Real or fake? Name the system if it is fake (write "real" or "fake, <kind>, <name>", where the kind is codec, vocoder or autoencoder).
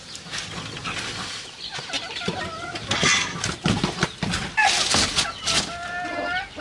real